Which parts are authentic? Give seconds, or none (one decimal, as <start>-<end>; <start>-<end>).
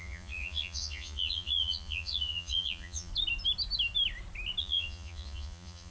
3.1-4.6